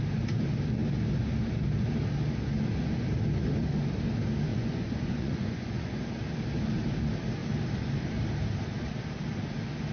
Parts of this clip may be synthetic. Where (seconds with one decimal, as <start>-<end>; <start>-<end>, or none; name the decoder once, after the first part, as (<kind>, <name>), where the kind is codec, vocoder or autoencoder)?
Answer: 4.5-6.0 (vocoder, Vocos)